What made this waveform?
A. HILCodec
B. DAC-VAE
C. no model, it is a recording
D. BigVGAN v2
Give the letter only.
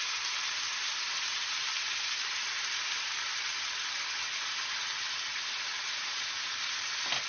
C